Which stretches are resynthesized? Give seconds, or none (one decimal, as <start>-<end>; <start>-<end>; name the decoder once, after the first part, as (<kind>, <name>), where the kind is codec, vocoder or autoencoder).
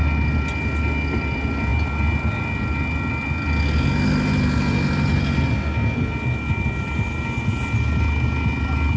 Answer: none